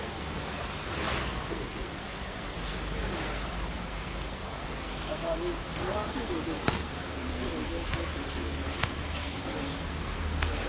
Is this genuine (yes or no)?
no